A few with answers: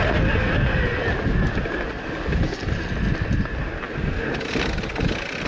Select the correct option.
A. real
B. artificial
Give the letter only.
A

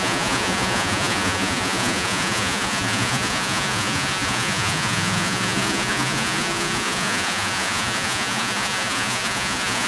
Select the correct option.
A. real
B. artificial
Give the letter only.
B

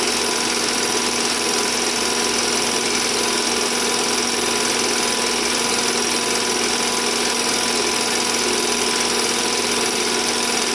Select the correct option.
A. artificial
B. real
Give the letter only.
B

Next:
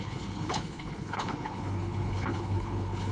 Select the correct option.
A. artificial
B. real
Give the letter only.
A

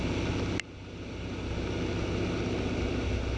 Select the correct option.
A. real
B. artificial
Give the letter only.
A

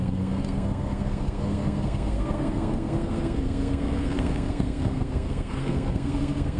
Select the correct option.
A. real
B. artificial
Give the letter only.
B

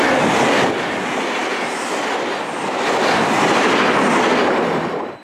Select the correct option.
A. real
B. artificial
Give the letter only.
B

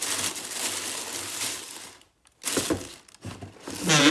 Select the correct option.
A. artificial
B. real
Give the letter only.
B